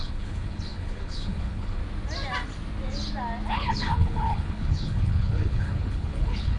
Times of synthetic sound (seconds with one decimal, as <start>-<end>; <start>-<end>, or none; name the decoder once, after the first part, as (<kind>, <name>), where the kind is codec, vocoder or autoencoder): 0.0-1.8 (codec, HILCodec); 3.5-6.6